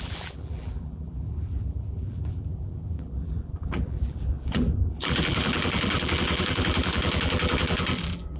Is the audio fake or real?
fake